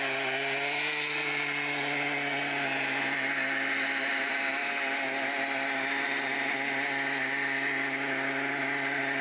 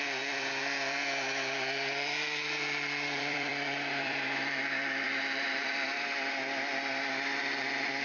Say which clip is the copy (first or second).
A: second